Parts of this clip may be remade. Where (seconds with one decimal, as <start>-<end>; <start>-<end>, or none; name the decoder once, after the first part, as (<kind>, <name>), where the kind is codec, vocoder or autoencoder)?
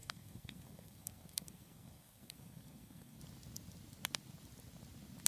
0.0-3.2 (codec, SNAC)